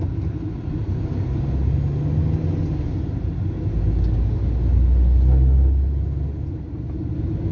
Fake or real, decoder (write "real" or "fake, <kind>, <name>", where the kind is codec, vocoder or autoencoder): real